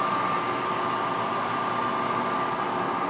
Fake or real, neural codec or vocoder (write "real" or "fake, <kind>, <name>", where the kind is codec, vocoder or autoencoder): real